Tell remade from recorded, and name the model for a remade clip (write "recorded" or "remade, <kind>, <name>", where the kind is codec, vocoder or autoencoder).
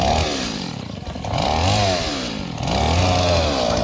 recorded